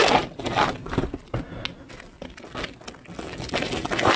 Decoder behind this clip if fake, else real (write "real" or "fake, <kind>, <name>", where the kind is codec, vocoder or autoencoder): real